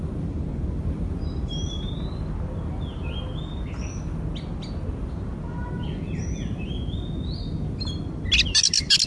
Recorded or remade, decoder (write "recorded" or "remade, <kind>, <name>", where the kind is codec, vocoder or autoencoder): recorded